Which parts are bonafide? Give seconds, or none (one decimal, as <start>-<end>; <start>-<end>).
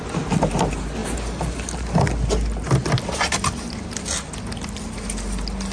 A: 0.0-5.7